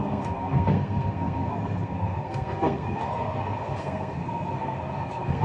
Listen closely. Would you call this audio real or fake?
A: fake